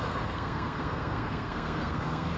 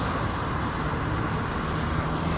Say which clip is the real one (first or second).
second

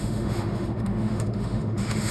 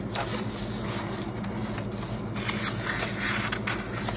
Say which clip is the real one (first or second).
second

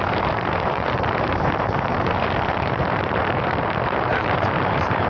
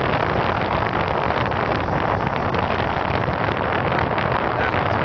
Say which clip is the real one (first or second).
second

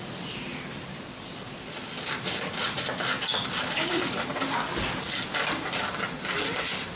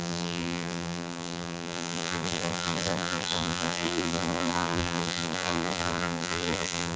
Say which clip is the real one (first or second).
first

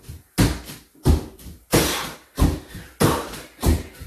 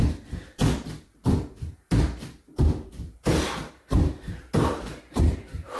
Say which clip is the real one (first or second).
first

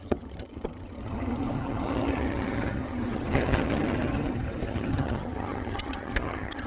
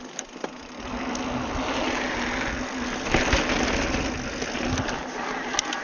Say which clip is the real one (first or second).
second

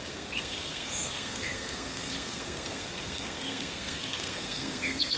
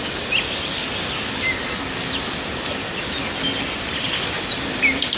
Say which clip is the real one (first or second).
second